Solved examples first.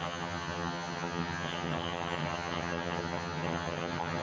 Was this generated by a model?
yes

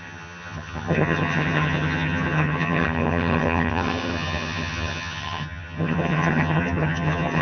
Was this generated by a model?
yes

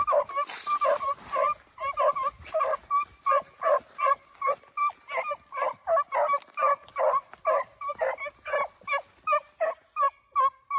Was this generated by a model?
no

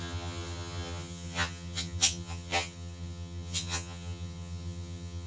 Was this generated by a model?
yes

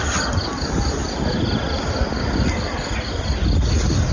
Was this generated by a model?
no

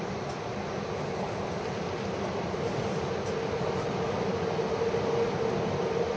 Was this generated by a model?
no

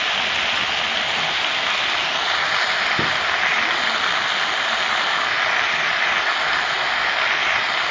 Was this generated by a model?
no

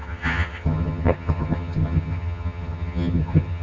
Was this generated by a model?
yes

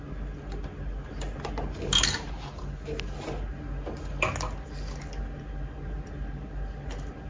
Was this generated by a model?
no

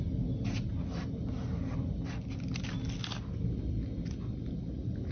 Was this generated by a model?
no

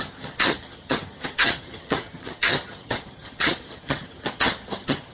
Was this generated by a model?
yes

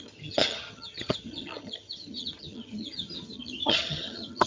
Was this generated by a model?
yes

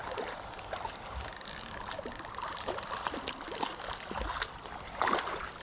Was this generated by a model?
no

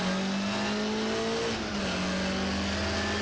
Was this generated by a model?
no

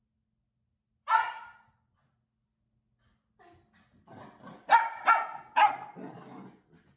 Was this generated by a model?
no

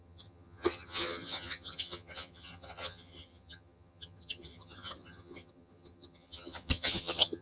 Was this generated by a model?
yes